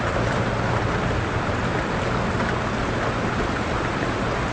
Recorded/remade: recorded